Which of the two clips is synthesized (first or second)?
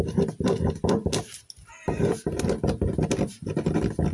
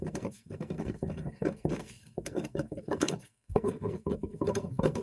second